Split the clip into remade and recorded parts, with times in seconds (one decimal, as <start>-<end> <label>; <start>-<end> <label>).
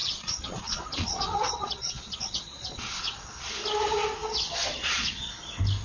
0.0-3.5 remade; 3.5-4.2 recorded; 4.2-5.3 remade; 5.3-5.8 recorded